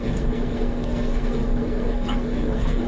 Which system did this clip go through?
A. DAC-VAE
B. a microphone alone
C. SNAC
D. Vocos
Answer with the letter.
C